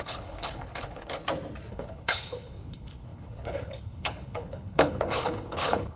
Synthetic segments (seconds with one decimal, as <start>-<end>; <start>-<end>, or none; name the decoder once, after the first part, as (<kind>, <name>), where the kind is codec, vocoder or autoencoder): 0.0-1.2 (codec, HILCodec); 1.7-6.0

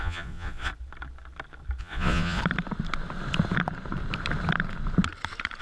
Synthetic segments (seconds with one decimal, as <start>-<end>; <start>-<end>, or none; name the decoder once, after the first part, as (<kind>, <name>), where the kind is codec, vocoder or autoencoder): 0.0-0.7 (vocoder, Vocos); 1.8-2.4

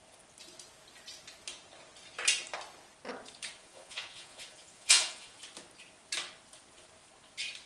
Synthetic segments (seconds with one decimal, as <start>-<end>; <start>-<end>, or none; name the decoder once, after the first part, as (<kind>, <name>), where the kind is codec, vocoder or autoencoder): 3.6-5.4 (vocoder, Vocos)

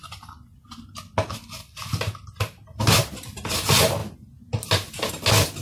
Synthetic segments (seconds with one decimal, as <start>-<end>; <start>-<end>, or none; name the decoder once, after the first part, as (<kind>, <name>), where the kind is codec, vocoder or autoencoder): none

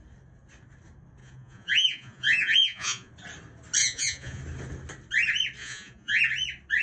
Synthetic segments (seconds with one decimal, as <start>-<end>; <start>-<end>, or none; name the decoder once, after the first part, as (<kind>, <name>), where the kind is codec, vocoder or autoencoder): 1.2-3.1 (vocoder, Vocos); 3.8-4.4; 5.6-6.2

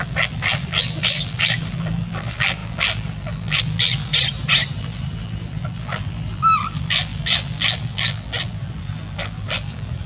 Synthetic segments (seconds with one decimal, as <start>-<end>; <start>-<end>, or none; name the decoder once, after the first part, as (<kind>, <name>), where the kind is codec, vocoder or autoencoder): 0.0-4.1 (vocoder, BigVGAN v2); 4.8-10.1